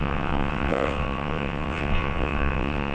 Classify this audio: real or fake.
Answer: fake